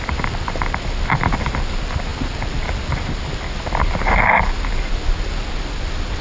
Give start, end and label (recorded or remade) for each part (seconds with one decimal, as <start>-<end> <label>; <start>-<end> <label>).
0.0-6.2 recorded